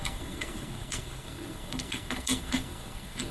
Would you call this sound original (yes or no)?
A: no